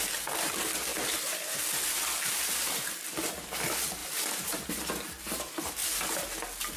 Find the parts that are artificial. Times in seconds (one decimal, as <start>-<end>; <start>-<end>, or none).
none